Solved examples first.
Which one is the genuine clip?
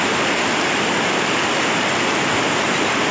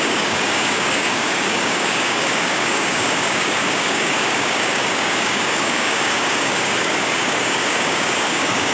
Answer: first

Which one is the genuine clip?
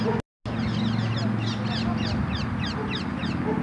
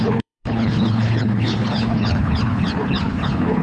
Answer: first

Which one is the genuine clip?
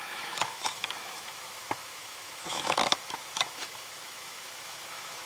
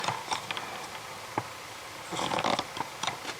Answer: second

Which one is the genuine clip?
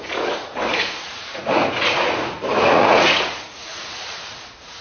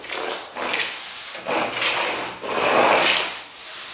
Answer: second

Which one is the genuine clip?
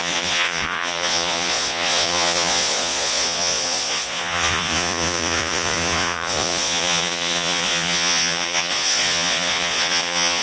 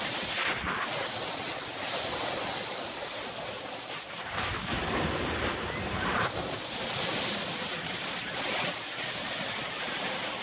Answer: second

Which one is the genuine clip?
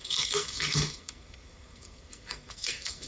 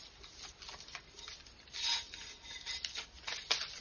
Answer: second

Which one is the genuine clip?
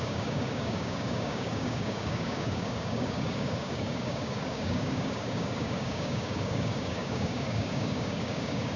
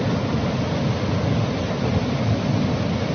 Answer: second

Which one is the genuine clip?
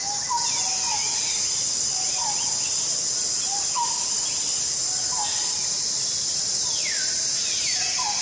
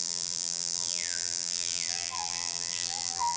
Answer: first